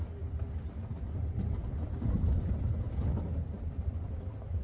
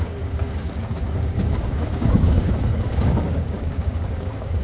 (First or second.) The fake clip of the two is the second